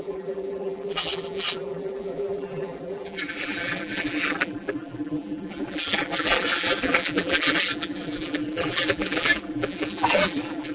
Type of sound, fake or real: fake